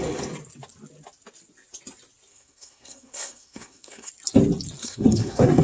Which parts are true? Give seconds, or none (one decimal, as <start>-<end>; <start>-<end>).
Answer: 0.0-2.3; 4.1-4.8